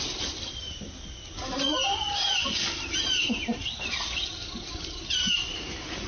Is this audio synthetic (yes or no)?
no